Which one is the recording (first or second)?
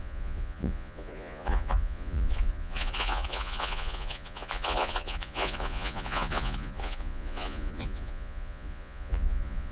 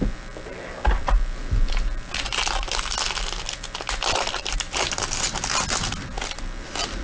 second